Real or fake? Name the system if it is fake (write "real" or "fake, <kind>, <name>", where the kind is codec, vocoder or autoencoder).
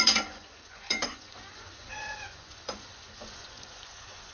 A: fake, vocoder, Vocos